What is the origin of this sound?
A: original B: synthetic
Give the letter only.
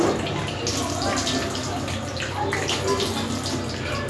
A